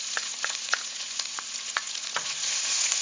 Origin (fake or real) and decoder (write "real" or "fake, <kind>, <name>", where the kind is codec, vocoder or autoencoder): fake, vocoder, Vocos